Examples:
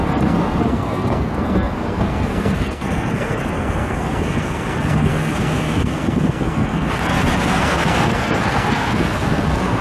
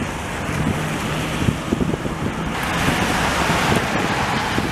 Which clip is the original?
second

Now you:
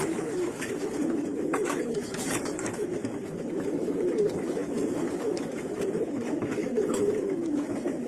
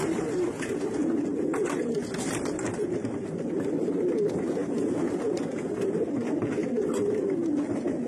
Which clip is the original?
second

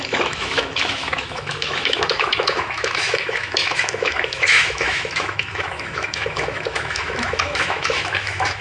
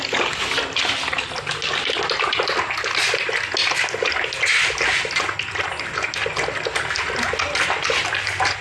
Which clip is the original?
second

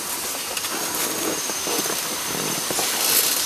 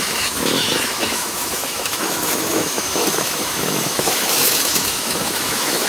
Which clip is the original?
first